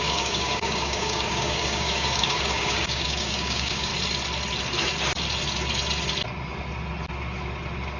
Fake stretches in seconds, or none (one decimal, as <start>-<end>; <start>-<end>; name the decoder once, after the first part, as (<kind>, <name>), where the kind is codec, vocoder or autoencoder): 0.0-3.9 (codec, DAC)